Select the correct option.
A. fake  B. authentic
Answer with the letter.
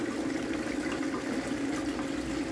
B